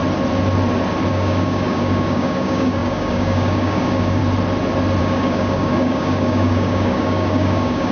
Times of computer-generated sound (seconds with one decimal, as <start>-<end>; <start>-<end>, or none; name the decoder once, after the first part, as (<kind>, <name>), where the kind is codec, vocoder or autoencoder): 1.1-4.2 (codec, DAC); 5.0-7.9